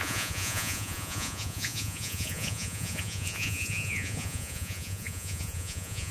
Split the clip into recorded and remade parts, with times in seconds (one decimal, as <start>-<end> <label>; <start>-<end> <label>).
0.0-6.1 remade